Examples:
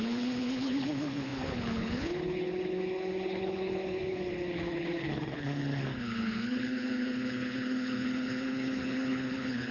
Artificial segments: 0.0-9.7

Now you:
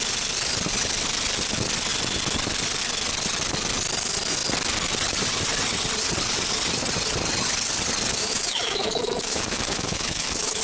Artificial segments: 8.2-10.6

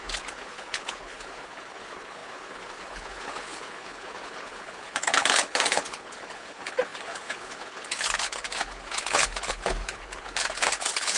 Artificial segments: 0.0-11.2

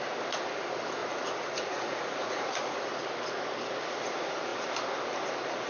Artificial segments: 1.0-2.9